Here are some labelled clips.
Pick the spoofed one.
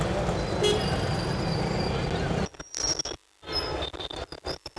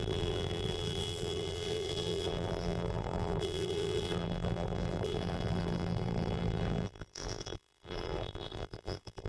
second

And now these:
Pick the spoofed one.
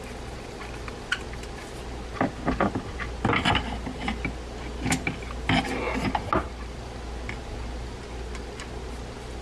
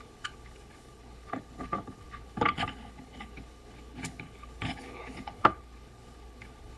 second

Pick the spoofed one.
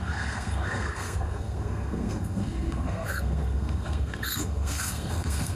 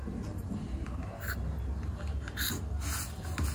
first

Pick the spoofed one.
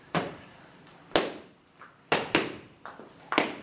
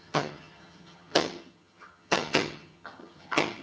second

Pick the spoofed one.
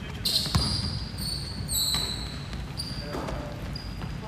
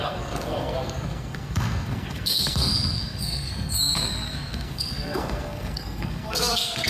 second